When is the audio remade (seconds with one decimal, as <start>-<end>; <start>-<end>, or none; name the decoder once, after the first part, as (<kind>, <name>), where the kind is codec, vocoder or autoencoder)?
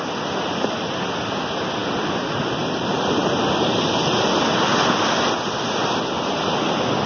none